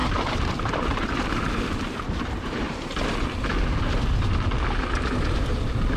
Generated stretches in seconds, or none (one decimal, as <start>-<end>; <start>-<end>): 0.0-3.5; 5.3-6.0

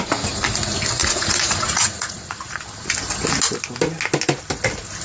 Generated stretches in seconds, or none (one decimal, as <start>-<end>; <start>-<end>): 1.0-2.6

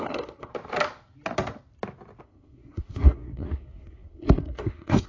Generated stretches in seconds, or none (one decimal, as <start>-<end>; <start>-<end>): 0.0-0.5; 2.2-5.1

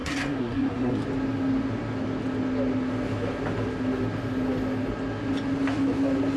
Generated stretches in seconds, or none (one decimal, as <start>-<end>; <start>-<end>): 0.0-1.0

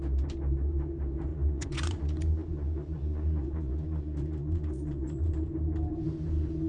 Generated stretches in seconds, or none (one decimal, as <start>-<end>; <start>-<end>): 1.3-5.3

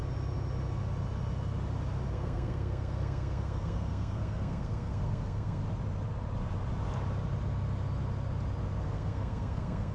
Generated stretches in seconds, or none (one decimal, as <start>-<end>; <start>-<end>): 2.1-5.6; 8.8-9.9

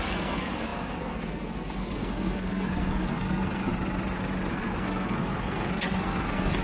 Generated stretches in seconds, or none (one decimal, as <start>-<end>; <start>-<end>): 0.0-3.7; 4.5-6.6